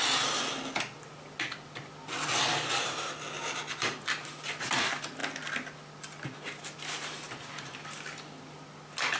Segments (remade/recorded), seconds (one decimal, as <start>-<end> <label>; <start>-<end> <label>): 0.0-9.2 recorded